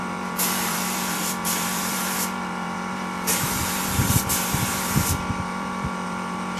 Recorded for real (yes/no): no